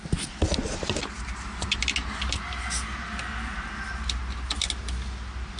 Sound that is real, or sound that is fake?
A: real